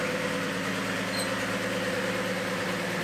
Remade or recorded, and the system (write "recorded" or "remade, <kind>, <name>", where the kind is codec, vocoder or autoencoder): remade, vocoder, BigVGAN v2